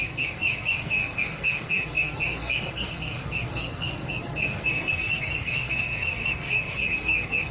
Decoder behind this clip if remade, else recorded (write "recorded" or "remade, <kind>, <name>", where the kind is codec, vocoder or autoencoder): remade, codec, SNAC